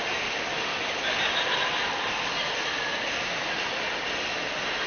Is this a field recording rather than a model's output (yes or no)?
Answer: yes